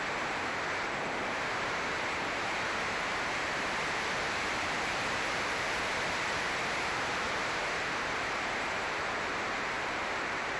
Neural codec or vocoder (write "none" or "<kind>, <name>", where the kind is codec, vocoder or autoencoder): vocoder, BigVGAN v2